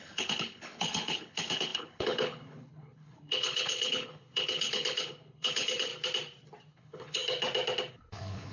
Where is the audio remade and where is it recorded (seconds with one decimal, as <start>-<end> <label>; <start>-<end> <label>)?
0.0-5.9 remade; 5.9-6.7 recorded; 6.7-7.2 remade; 7.2-7.9 recorded; 7.9-8.5 remade